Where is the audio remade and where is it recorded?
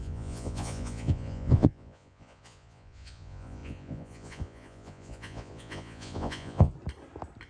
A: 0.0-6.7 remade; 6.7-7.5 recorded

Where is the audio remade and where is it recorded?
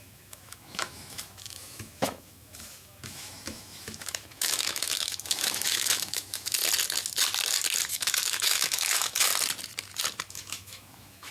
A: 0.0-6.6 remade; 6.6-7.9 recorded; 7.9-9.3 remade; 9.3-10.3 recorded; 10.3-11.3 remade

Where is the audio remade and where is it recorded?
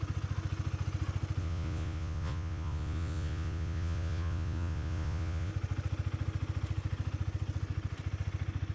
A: 0.0-1.4 recorded; 1.4-5.5 remade; 5.5-8.7 recorded